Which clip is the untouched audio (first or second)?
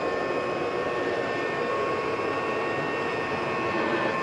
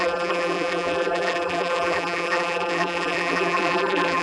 first